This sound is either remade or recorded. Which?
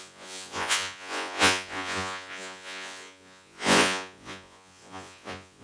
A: remade